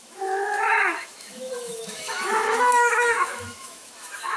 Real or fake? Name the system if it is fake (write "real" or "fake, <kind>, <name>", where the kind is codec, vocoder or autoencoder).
fake, autoencoder, DAC-VAE